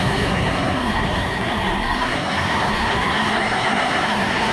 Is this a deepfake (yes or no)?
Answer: yes